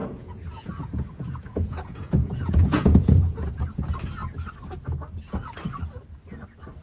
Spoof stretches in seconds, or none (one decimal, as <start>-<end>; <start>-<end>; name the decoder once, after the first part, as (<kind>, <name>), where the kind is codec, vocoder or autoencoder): 0.0-3.6 (vocoder, Vocos)